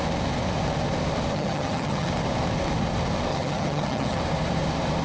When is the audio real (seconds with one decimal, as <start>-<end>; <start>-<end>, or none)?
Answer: 0.0-1.3; 2.1-3.3; 4.2-5.0